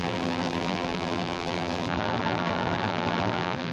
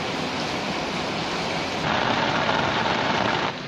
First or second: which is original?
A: second